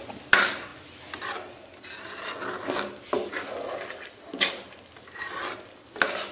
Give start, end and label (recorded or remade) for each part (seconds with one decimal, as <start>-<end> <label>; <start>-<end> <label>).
0.0-6.3 recorded